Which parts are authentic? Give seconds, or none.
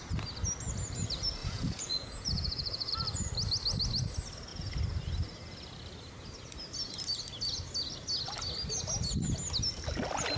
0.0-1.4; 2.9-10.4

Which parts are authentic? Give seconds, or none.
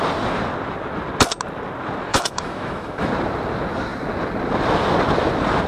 0.0-2.1; 3.1-5.7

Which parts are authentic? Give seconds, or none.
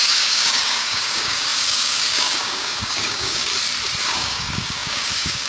3.5-4.0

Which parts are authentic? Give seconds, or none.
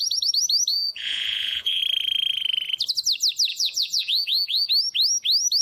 0.0-0.7; 1.8-3.5; 4.7-5.6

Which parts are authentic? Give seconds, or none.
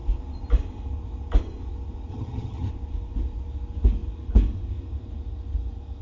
0.0-2.1; 2.7-6.0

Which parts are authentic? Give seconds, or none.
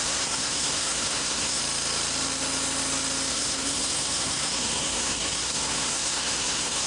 1.6-3.3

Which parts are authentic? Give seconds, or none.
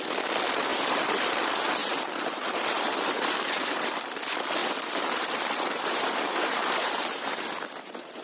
0.0-0.7; 1.4-1.8; 3.9-4.6; 7.3-8.2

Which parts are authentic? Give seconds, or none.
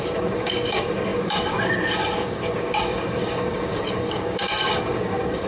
none